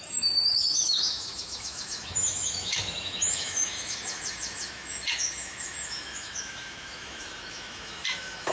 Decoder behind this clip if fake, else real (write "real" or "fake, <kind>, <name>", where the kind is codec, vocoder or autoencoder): fake, autoencoder, DAC-VAE